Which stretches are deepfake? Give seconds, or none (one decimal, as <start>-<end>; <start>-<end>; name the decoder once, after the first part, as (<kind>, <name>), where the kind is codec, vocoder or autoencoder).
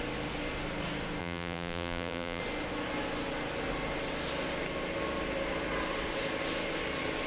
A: 1.2-2.4 (vocoder, BigVGAN v2)